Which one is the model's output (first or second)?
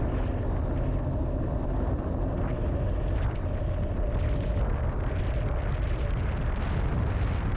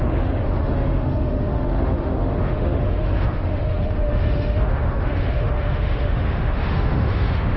second